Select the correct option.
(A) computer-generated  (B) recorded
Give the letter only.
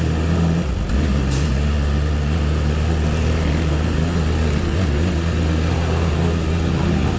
B